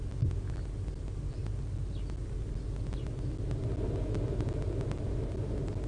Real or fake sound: real